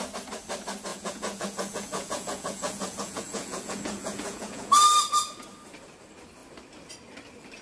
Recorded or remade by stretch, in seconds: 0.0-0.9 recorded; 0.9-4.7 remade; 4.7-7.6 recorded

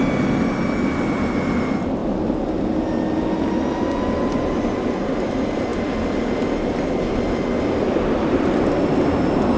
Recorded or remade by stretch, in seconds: 0.0-9.6 recorded

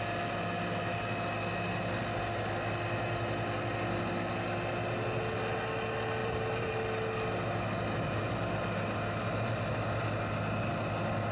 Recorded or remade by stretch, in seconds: 0.0-6.2 recorded; 6.2-6.7 remade; 6.7-11.3 recorded

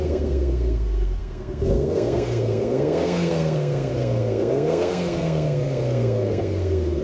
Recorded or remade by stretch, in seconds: 0.0-7.0 remade

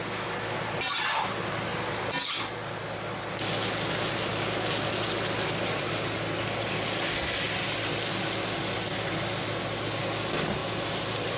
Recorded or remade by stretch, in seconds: 0.0-11.4 recorded

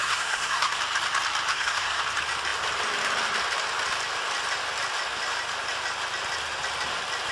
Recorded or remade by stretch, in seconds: 0.0-0.8 remade; 0.8-1.5 recorded; 1.5-2.0 remade; 2.0-7.3 recorded

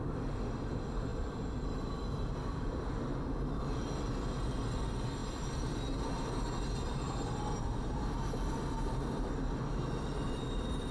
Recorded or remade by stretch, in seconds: 0.0-10.9 recorded

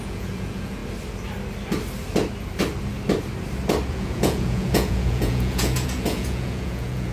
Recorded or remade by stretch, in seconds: 0.0-0.8 remade; 0.8-3.9 recorded; 3.9-7.1 remade